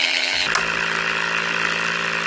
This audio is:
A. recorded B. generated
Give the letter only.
A